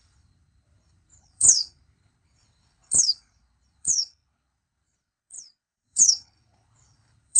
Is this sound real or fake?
fake